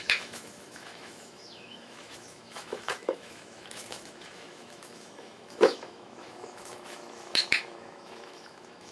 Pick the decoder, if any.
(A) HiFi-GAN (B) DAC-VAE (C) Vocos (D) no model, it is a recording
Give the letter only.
B